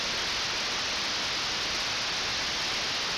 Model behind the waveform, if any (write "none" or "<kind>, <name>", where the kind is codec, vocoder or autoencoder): none